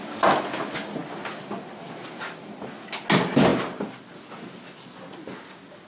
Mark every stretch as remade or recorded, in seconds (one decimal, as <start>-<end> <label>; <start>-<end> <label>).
0.0-5.9 recorded